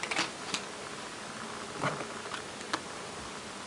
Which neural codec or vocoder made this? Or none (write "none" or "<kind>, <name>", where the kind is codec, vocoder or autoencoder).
none